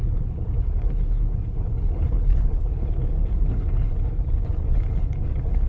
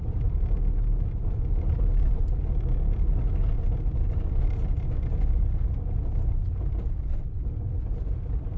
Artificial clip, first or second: first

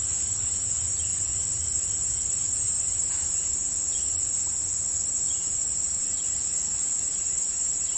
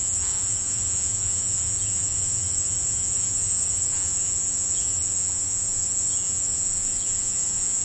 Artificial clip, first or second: second